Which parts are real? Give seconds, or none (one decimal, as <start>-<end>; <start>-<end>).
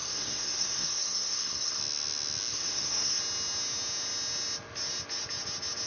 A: 1.8-2.5; 3.2-5.9